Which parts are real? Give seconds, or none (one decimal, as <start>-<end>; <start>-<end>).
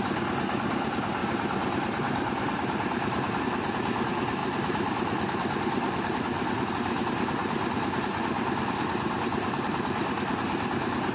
0.0-1.2; 3.4-4.4; 6.7-7.4; 9.7-11.1